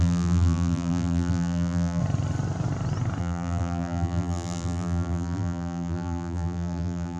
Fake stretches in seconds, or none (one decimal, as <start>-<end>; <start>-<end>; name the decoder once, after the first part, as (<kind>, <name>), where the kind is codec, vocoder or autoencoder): 0.0-2.0 (vocoder, BigVGAN v2); 3.2-7.2